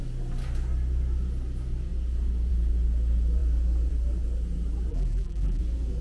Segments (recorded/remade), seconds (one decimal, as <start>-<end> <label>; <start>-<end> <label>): 0.0-4.9 recorded; 4.9-5.6 remade; 5.6-6.0 recorded